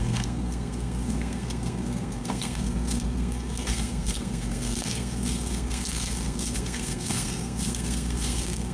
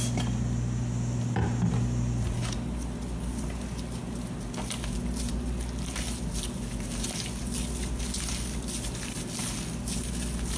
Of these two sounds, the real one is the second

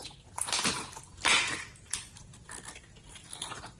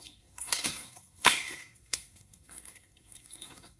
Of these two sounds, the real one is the first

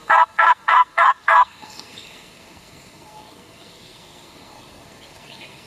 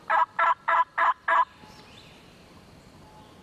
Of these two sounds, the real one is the second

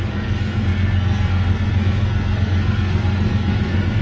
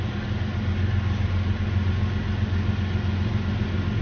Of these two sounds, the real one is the second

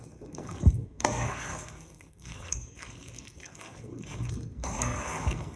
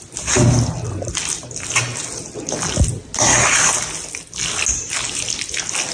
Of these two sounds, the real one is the second